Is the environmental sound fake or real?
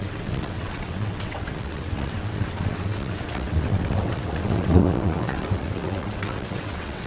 fake